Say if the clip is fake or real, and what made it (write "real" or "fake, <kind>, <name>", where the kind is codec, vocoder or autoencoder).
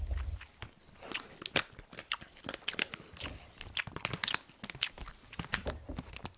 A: real